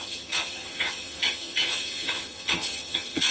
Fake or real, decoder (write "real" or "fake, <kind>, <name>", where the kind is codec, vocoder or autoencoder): fake, vocoder, HiFi-GAN